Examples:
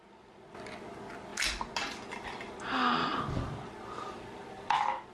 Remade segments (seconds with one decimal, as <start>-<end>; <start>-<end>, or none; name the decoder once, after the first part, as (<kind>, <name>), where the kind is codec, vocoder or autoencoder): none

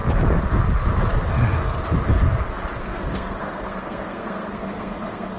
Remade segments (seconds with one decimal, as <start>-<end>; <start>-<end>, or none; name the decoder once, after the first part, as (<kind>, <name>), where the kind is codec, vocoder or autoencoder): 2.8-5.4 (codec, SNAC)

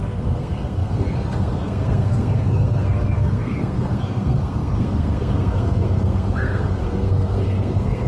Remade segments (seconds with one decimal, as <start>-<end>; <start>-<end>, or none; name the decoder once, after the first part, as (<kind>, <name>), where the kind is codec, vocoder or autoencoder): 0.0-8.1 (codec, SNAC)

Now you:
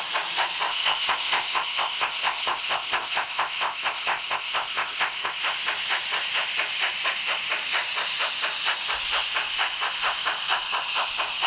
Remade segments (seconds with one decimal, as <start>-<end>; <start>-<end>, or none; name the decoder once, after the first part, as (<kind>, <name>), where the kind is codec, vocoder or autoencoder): 0.7-5.4 (codec, ZipCodec)